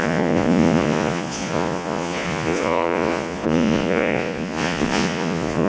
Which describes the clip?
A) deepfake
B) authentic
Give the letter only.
A